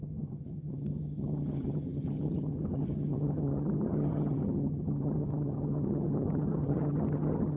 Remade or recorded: remade